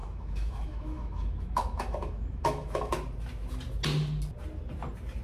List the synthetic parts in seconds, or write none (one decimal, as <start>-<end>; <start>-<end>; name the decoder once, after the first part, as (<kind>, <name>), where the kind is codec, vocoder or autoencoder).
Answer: 0.0-2.9 (autoencoder, DAC-VAE)